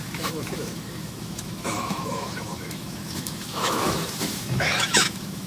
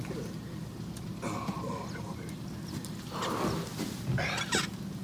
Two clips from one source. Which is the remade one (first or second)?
first